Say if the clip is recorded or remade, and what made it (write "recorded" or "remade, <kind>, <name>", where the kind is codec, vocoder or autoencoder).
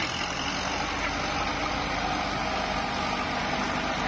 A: recorded